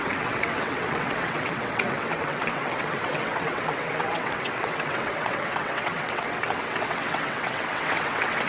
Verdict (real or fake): fake